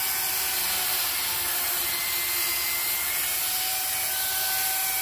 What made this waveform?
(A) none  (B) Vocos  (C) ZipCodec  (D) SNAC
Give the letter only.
A